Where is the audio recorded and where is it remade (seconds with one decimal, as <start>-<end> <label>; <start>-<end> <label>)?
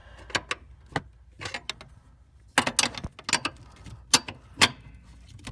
0.0-5.5 recorded